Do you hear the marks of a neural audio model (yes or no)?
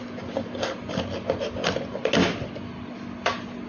no